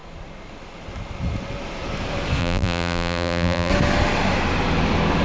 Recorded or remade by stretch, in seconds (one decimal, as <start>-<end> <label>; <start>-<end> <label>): 0.0-2.4 recorded; 2.4-3.7 remade; 3.7-5.2 recorded